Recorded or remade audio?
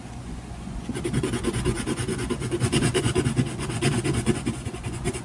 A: remade